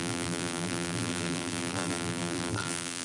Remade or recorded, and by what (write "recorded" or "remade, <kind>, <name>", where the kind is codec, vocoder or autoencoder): remade, vocoder, BigVGAN v2